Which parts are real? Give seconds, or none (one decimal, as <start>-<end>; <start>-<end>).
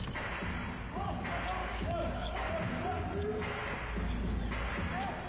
0.0-1.6; 2.5-5.3